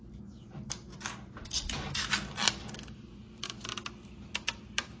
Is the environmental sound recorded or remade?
recorded